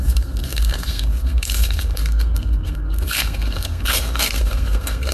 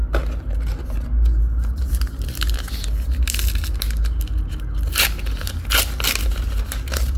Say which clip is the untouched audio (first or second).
second